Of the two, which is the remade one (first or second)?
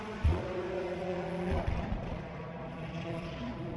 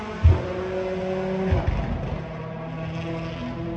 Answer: first